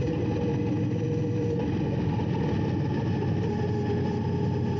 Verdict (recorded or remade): recorded